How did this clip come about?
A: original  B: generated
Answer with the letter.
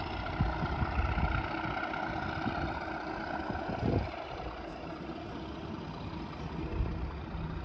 A